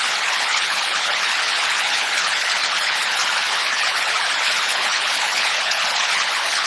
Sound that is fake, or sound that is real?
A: fake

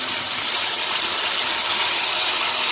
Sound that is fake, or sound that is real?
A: real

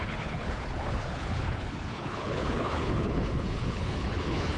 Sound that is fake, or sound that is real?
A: fake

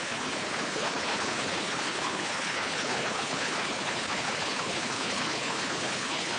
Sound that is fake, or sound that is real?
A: fake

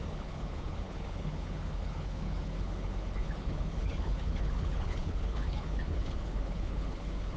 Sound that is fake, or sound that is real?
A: fake